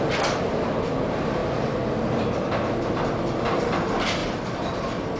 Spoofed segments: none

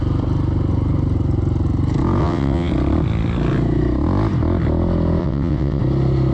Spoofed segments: 2.2-2.7 (vocoder, WaveNeXt); 5.2-5.8

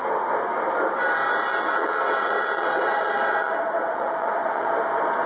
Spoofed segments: 1.5-4.7 (vocoder, WaveNeXt)